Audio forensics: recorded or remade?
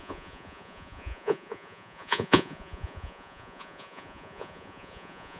remade